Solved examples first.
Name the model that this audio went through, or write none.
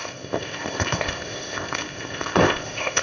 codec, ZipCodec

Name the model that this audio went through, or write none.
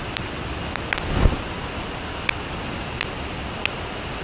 none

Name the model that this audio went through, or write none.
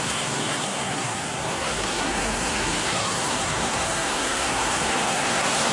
codec, SNAC